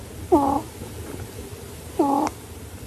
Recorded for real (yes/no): yes